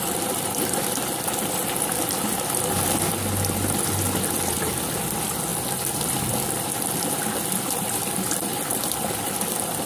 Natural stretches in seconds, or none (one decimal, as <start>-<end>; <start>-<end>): 0.0-5.5; 6.3-8.5; 9.2-9.9